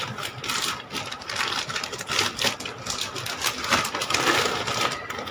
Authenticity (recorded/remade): recorded